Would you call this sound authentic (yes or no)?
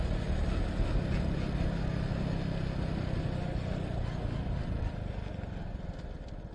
yes